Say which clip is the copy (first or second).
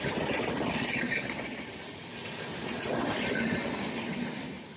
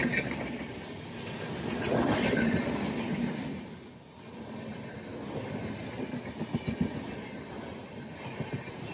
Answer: first